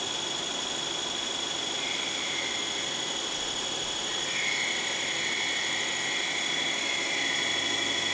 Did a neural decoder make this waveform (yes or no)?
no